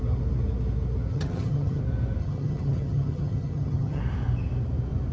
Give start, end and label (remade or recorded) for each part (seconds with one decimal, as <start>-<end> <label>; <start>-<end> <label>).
0.0-1.1 recorded; 1.1-1.8 remade; 1.8-2.2 recorded; 2.2-4.0 remade; 4.0-5.1 recorded